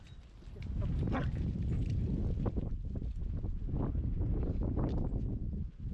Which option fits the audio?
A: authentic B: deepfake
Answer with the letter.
A